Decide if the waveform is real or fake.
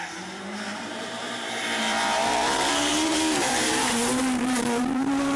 fake